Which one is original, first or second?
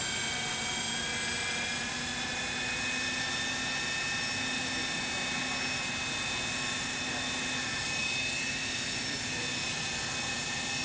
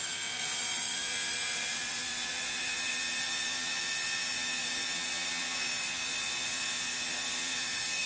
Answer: first